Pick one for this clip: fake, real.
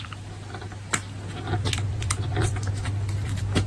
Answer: fake